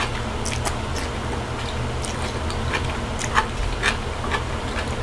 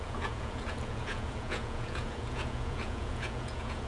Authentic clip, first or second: first